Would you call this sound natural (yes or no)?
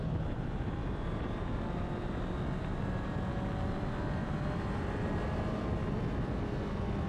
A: yes